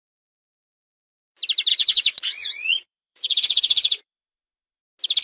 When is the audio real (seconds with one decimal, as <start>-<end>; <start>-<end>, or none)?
0.0-1.7; 4.8-5.2